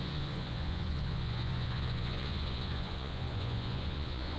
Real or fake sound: fake